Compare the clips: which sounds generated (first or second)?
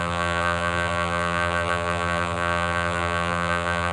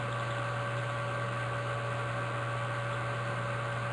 first